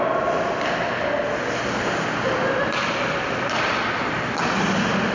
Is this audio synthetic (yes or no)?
no